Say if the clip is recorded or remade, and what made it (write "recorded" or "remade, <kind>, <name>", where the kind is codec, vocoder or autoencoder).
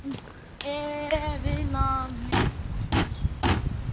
recorded